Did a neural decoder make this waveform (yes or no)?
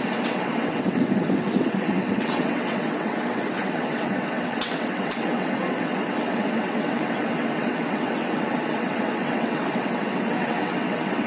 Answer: yes